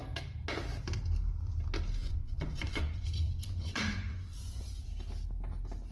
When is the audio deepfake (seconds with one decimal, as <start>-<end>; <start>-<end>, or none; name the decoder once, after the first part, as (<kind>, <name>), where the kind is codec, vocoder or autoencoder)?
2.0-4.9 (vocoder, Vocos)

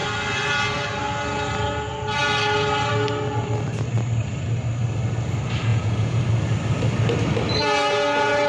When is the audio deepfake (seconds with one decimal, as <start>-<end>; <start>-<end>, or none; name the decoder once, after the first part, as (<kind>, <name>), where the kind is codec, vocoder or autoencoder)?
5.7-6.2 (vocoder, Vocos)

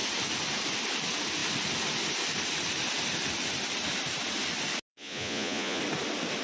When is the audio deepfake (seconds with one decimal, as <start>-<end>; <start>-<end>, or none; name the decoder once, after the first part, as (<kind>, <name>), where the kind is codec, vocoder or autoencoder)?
4.9-5.8 (vocoder, Vocos)

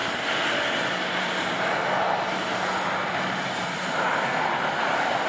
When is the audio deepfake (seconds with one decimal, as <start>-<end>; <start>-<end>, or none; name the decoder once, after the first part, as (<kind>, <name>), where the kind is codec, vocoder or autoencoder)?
none

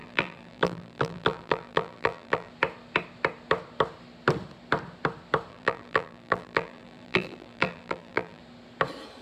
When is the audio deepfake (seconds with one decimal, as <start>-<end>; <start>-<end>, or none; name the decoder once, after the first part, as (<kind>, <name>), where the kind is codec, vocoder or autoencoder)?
0.0-2.5 (vocoder, BigVGAN v2); 5.5-8.4

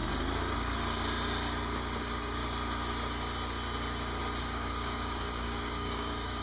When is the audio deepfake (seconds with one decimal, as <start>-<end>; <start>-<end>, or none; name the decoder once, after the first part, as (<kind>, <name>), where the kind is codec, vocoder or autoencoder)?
2.0-2.4 (codec, DAC); 4.4-6.4

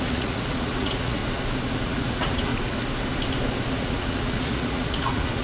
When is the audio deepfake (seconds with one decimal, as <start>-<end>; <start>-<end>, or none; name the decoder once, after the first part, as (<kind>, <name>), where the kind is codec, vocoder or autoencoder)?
0.0-1.2 (vocoder, Vocos); 1.7-2.5; 3.7-5.4

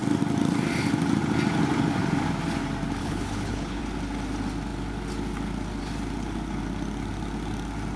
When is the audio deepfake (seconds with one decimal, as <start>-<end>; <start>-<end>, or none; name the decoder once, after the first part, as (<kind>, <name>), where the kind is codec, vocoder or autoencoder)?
3.0-3.8 (codec, HILCodec)